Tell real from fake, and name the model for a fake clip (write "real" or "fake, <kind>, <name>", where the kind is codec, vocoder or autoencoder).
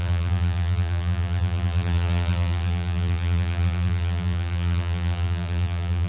fake, vocoder, BigVGAN v2